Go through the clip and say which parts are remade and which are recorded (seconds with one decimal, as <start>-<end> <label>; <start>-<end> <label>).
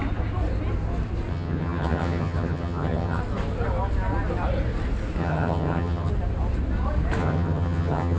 0.0-1.3 recorded; 1.3-3.2 remade; 3.2-5.2 recorded; 5.2-6.1 remade; 6.1-7.2 recorded; 7.2-8.2 remade